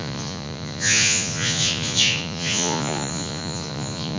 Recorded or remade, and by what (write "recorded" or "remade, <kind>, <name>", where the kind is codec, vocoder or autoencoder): remade, vocoder, Vocos